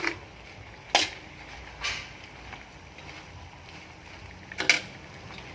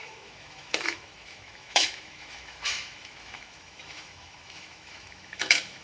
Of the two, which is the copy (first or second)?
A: second